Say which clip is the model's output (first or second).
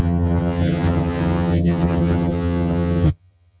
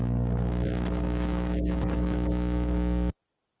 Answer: first